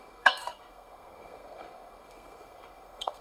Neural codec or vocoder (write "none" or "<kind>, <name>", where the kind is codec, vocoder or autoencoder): codec, SNAC